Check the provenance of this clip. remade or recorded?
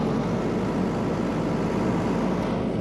recorded